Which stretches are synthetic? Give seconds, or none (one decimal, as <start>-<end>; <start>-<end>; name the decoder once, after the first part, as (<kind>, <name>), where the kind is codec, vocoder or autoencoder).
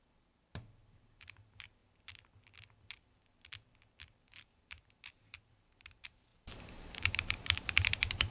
0.0-1.8 (vocoder, BigVGAN v2); 4.2-8.3